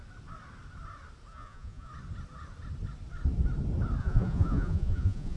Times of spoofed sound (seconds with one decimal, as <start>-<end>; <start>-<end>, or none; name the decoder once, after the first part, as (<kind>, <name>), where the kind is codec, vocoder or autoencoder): 1.3-1.9 (vocoder, Vocos); 4.0-5.4